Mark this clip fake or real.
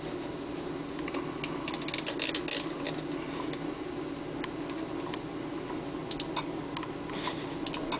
real